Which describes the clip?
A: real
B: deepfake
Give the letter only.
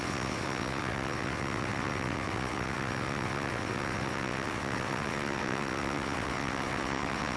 B